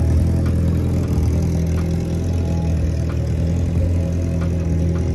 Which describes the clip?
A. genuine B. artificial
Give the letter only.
A